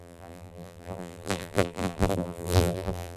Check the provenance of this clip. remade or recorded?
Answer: remade